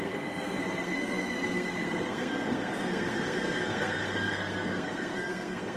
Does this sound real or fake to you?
fake